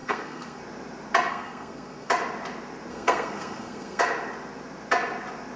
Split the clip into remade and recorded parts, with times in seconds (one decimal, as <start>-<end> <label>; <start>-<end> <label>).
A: 0.0-0.6 remade; 0.6-1.3 recorded; 1.3-2.1 remade; 2.1-2.9 recorded; 2.9-4.0 remade; 4.0-5.6 recorded